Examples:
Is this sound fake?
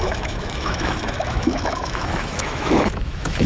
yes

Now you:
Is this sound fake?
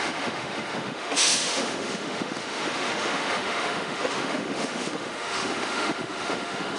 yes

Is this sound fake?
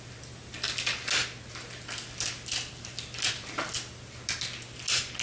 no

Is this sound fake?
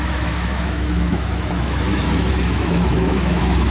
yes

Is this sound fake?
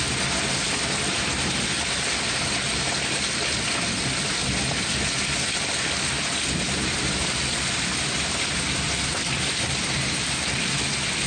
no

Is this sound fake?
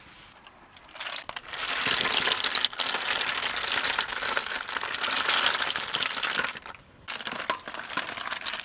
no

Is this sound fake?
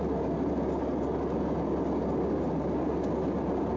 no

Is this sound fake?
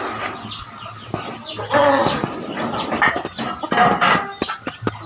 no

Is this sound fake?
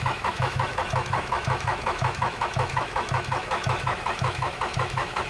yes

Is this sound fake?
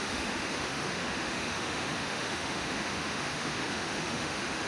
yes